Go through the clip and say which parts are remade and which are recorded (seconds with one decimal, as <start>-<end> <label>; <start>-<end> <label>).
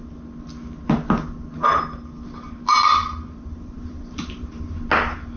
0.0-3.0 recorded; 3.0-4.8 remade; 4.8-5.4 recorded